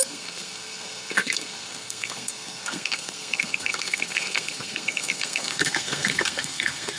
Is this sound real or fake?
fake